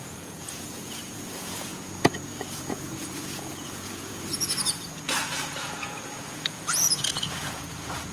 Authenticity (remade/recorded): remade